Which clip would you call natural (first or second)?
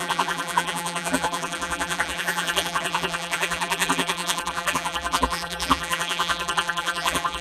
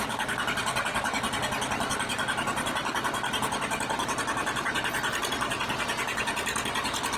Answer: second